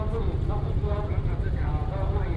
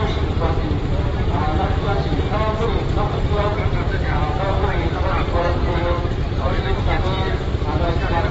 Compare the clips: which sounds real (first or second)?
first